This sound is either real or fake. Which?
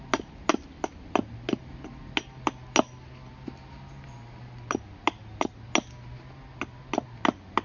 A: real